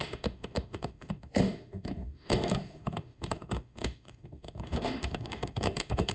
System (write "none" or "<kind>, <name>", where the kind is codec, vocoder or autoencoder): autoencoder, DAC-VAE